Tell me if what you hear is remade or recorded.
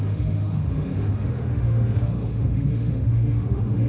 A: remade